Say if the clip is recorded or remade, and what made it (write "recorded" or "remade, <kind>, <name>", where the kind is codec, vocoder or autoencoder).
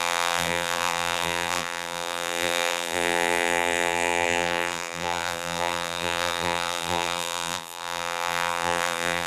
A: remade, vocoder, BigVGAN v2